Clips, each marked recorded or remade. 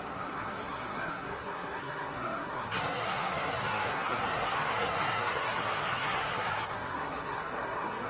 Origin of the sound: remade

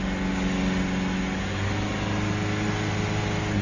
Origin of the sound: recorded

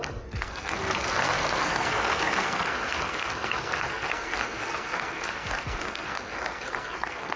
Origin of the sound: remade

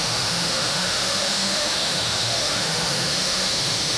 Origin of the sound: remade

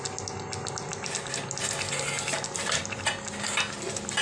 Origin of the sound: recorded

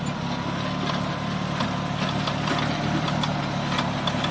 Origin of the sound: recorded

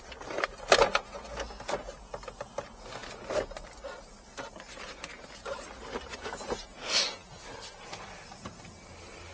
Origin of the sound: recorded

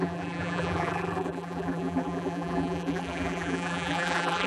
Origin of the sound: remade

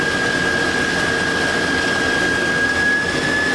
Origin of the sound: recorded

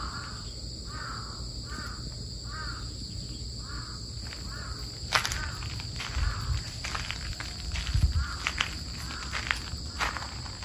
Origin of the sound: recorded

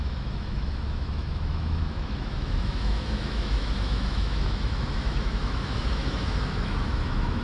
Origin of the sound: remade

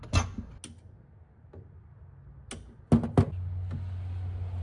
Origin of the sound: recorded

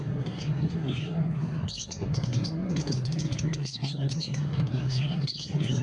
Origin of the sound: remade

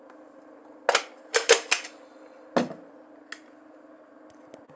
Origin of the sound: recorded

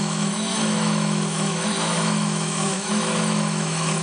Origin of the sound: remade